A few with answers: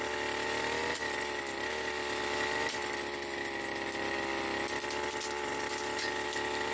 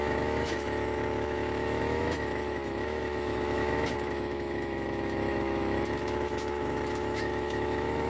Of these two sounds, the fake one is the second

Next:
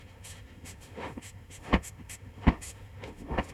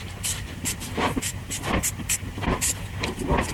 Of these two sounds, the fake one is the first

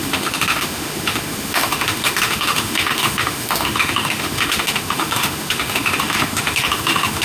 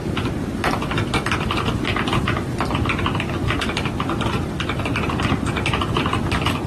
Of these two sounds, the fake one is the first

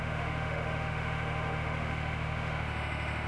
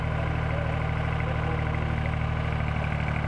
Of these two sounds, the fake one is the first